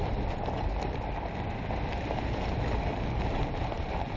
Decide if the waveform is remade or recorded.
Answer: recorded